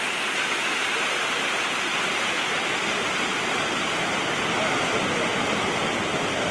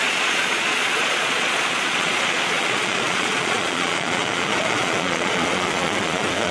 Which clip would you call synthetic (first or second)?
second